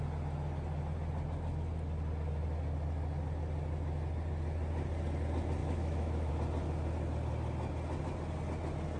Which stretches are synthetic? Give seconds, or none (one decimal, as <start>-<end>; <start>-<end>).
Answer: 5.6-6.3